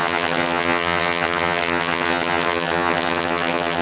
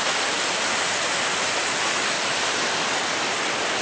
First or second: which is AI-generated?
first